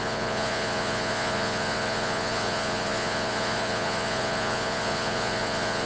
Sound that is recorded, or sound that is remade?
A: remade